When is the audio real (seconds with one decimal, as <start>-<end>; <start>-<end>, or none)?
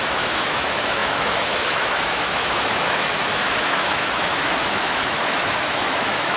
none